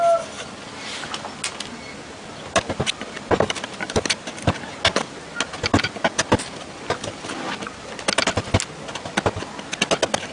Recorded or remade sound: recorded